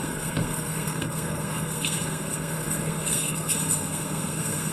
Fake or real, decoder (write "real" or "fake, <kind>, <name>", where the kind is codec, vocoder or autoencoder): fake, codec, SNAC